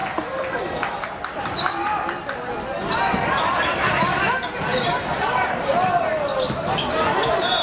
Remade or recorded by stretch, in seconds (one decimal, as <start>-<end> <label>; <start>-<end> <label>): 0.0-3.3 recorded; 3.3-6.1 remade; 6.1-6.9 recorded; 6.9-7.6 remade